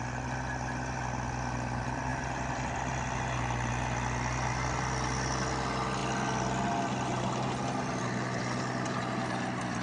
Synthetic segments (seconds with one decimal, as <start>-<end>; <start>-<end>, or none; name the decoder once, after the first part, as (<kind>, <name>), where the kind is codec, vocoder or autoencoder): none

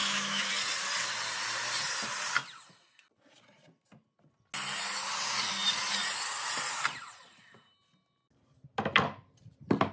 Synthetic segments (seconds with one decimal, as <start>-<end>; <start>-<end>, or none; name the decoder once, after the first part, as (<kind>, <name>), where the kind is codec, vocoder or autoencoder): 0.0-0.5 (autoencoder, DAC-VAE)

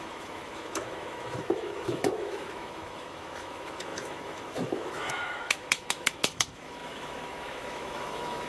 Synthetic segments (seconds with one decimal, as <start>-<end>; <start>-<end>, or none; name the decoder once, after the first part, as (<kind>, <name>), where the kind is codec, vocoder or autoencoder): 0.0-8.5 (autoencoder, DAC-VAE)

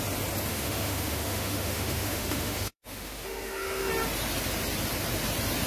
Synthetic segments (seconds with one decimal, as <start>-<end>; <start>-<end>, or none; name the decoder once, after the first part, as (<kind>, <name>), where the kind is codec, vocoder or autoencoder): 0.5-3.9 (autoencoder, DAC-VAE)

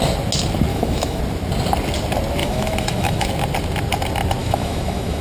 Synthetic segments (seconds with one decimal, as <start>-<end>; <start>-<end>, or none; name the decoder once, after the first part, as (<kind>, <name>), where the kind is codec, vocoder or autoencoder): 0.7-1.2 (autoencoder, DAC-VAE); 2.4-3.3; 4.4-5.2

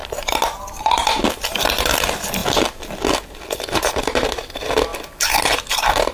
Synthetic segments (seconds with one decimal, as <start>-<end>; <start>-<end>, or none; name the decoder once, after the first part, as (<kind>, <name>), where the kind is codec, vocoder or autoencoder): none